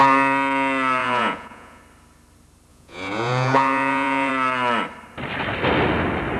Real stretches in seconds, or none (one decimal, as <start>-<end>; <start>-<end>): 0.0-1.0; 1.8-2.7; 4.3-6.4